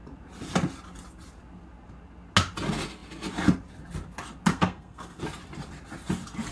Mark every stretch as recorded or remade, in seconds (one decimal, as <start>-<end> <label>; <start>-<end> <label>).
0.0-4.5 recorded; 4.5-5.2 remade; 5.2-6.5 recorded